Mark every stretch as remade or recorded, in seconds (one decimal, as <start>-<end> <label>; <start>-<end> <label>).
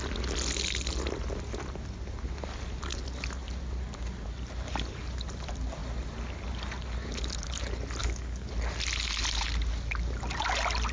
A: 0.0-8.0 recorded; 8.0-8.5 remade; 8.5-10.9 recorded